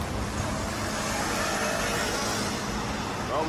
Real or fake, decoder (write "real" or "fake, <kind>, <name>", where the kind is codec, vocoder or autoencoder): real